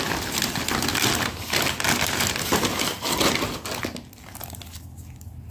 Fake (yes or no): no